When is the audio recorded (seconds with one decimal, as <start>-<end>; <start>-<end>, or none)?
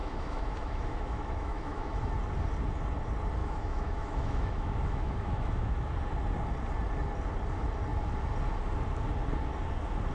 2.0-3.4; 5.9-10.1